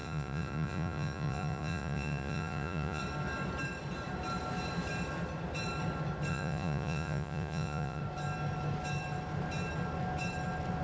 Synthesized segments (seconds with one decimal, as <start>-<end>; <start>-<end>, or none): 0.0-3.0; 6.3-8.0